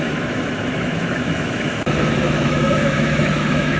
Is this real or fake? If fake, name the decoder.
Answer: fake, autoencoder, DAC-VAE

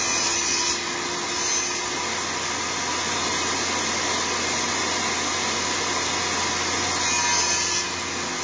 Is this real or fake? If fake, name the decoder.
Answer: real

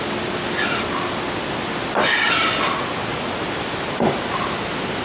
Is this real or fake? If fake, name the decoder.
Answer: real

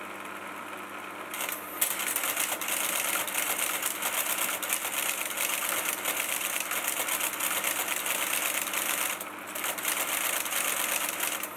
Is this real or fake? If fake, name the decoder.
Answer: real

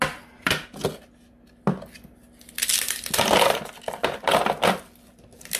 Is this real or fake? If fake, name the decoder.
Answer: real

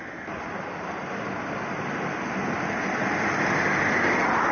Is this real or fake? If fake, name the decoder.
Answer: real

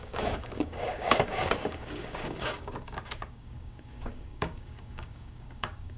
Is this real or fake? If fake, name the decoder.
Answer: fake, codec, DAC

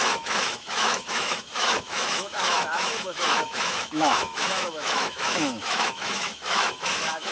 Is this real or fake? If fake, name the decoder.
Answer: fake, autoencoder, DAC-VAE